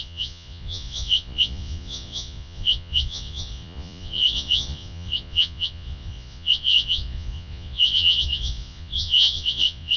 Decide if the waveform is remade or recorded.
remade